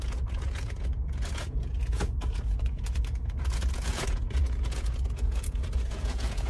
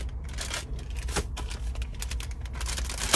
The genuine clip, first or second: second